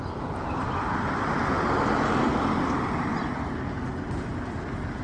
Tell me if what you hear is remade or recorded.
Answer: recorded